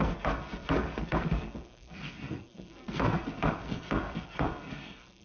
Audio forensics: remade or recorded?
remade